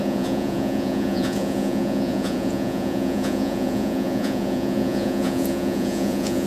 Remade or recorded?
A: remade